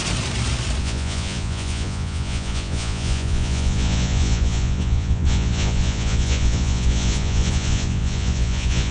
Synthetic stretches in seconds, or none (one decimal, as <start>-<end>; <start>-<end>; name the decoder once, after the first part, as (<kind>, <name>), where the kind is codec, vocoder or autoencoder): 0.8-8.9 (vocoder, Vocos)